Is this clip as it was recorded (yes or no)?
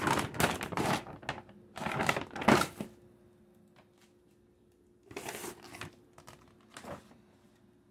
yes